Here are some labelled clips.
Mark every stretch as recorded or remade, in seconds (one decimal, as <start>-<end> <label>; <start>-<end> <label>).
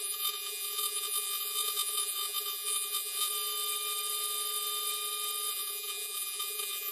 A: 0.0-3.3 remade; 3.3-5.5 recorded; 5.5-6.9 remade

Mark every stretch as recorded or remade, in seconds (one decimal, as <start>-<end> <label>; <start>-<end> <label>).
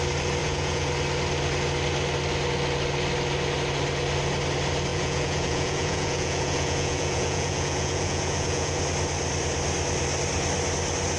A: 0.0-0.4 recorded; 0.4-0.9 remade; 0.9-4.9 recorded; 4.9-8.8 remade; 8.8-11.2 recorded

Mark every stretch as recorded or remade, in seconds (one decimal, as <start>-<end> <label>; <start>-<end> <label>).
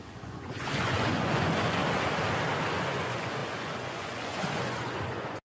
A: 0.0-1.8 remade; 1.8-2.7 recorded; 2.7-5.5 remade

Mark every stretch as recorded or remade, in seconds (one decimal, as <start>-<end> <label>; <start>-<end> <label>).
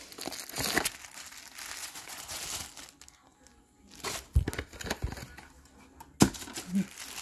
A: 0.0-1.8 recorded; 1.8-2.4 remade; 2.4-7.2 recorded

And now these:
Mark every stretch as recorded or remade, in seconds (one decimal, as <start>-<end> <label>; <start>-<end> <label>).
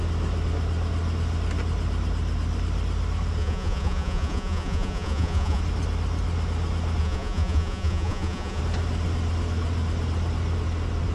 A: 0.0-3.4 recorded; 3.4-5.6 remade; 5.6-7.0 recorded; 7.0-8.6 remade; 8.6-11.1 recorded